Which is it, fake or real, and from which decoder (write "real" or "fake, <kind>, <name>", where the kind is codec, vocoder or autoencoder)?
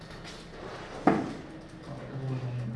real